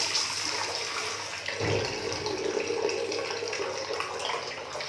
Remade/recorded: recorded